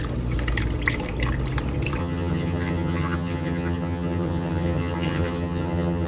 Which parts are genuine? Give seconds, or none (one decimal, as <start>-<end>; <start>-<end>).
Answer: 0.0-2.0